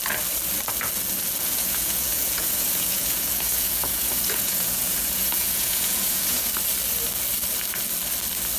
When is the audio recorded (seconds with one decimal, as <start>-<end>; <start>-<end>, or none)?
0.0-1.4; 6.5-8.6